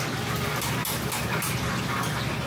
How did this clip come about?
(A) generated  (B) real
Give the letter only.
B